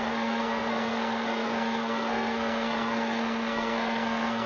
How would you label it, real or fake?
fake